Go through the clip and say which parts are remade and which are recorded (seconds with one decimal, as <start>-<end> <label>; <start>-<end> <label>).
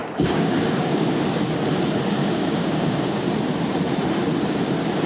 0.0-1.1 remade; 1.1-2.2 recorded; 2.2-3.3 remade; 3.3-5.1 recorded